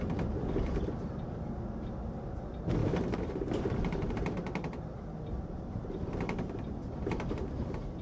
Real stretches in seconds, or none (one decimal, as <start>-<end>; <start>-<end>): none